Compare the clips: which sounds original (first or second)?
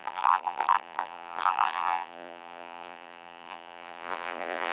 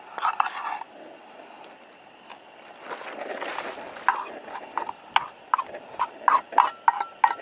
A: second